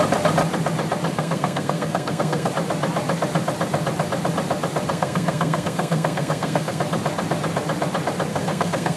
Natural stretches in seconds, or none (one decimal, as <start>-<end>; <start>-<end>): 0.0-1.1; 2.5-4.9; 6.8-8.3